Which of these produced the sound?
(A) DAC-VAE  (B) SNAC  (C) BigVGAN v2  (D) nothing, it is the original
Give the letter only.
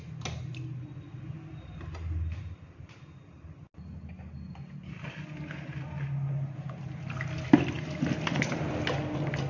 D